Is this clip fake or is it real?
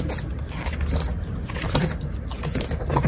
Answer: real